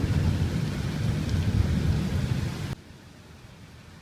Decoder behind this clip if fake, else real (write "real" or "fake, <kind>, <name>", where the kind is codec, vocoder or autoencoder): real